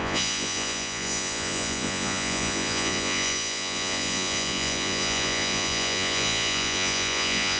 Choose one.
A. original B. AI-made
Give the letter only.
B